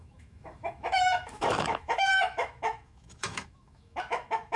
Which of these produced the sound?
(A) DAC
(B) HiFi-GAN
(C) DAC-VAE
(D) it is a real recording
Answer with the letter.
C